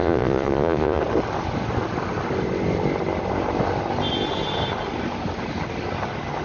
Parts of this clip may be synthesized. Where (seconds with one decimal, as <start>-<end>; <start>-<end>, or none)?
0.0-1.0